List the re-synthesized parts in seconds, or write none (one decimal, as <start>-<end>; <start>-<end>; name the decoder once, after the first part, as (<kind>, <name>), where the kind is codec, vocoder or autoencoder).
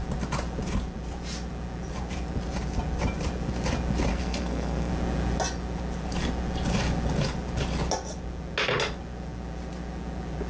4.1-4.9 (codec, SNAC)